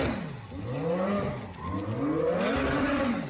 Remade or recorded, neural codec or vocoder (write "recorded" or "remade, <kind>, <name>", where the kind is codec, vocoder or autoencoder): recorded